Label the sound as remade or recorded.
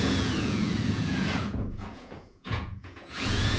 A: remade